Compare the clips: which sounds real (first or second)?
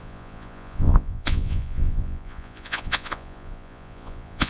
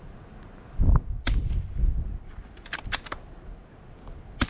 second